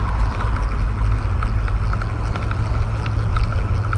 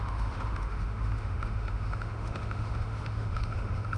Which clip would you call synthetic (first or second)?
second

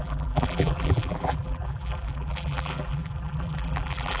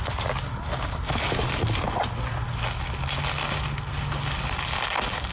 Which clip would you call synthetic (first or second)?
first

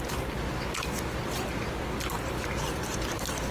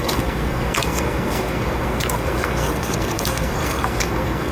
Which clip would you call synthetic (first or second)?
second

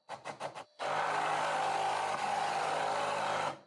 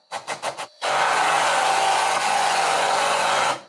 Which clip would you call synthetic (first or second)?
second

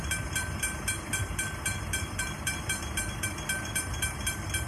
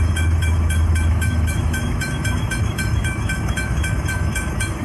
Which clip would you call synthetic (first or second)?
second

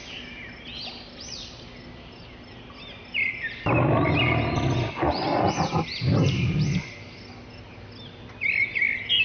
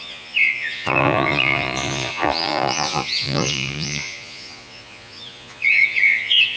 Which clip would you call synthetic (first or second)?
second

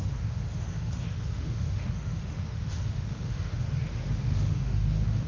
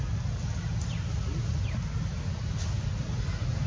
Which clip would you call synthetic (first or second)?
first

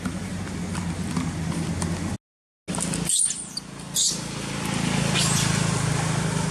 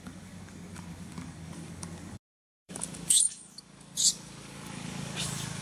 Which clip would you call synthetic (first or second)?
second